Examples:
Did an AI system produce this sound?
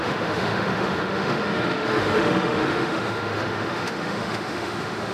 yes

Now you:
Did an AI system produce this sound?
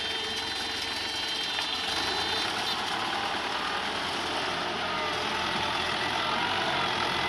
no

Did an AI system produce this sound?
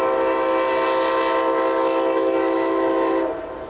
no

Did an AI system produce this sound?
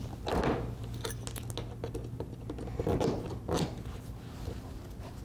no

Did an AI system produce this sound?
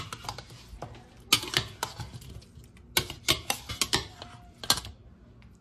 no